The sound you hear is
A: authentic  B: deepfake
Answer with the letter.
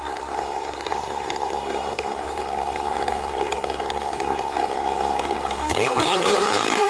B